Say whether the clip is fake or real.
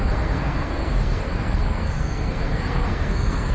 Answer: fake